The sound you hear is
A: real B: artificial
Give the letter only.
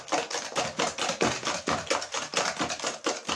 A